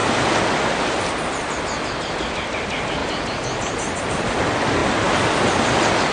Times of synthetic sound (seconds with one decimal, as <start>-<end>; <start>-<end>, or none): 0.0-0.9; 3.0-4.0; 4.8-5.4